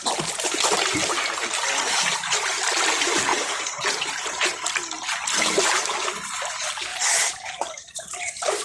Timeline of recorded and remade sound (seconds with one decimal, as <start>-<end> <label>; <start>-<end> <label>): 0.0-3.3 recorded; 3.3-4.5 remade; 4.5-6.9 recorded; 6.9-8.6 remade